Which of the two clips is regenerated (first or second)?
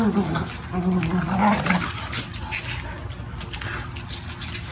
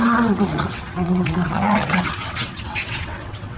second